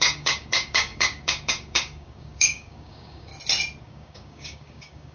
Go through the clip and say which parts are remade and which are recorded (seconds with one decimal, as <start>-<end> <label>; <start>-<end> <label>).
0.0-3.3 remade; 3.3-3.8 recorded; 3.8-5.1 remade